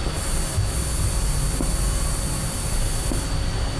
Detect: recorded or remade recorded